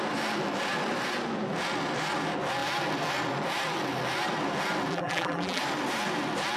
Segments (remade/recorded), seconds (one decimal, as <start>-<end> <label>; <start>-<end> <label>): 0.0-4.9 recorded; 4.9-5.6 remade; 5.6-6.6 recorded